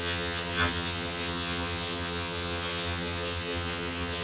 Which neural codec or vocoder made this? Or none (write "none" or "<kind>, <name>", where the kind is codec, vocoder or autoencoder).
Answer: vocoder, HiFi-GAN